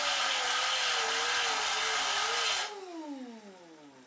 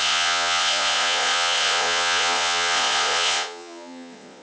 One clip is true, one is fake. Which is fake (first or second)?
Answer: second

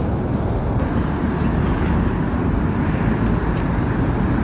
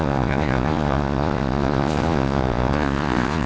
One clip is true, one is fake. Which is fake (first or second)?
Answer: second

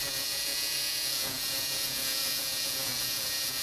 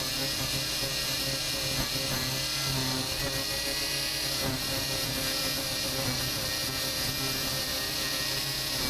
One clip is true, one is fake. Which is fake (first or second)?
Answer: first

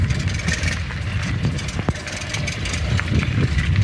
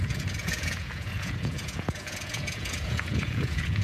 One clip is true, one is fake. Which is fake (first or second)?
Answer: second